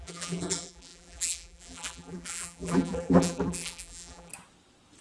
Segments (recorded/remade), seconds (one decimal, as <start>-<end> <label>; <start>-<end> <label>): 0.0-4.3 remade; 4.3-5.0 recorded